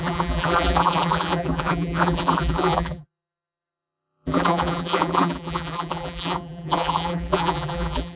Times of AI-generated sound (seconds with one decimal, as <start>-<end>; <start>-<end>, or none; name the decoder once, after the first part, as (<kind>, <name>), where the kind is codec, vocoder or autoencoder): 0.0-8.2 (vocoder, BigVGAN v2)